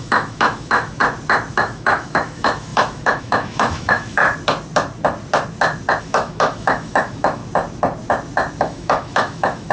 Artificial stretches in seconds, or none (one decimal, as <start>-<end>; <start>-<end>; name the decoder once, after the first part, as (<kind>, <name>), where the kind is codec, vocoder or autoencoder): 0.0-1.0 (autoencoder, DAC-VAE); 1.5-4.2; 6.0-7.4; 8.6-9.7